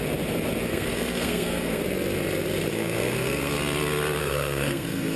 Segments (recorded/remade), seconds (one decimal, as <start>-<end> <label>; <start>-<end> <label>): 0.0-0.7 recorded; 0.7-1.8 remade; 1.8-2.7 recorded; 2.7-3.5 remade; 3.5-4.2 recorded; 4.2-5.2 remade